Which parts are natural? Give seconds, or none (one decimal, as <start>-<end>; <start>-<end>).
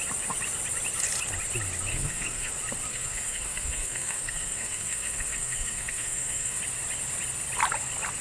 0.0-1.9; 2.5-2.9; 6.6-8.2